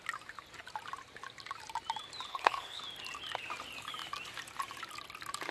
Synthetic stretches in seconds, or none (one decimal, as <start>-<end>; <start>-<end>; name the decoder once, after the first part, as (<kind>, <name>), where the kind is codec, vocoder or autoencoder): 2.3-2.8 (codec, HILCodec)